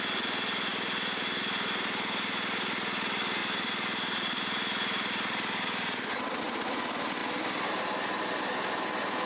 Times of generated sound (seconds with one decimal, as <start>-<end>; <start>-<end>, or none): 3.4-6.1